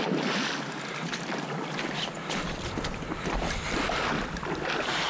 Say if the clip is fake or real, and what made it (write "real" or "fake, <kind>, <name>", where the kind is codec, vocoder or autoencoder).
real